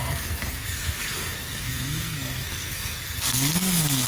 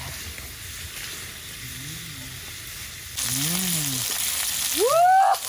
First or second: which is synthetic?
first